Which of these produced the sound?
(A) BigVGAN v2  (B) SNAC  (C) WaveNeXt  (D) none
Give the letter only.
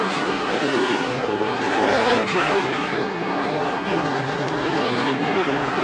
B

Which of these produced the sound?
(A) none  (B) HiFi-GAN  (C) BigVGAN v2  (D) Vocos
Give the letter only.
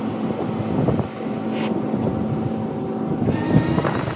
A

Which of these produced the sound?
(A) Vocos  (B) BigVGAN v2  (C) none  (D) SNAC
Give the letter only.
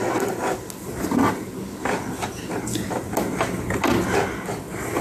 C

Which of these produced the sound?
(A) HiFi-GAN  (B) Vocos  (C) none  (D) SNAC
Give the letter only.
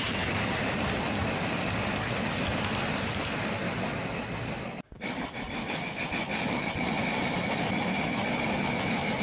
C